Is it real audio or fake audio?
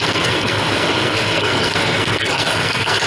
fake